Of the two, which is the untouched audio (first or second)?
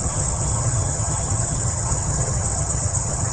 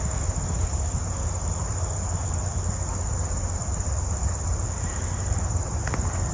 second